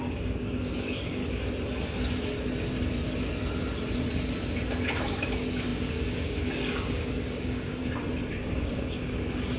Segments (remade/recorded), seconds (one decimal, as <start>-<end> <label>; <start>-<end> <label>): 0.0-1.2 remade; 1.2-5.0 recorded; 5.0-7.8 remade; 7.8-8.4 recorded; 8.4-9.6 remade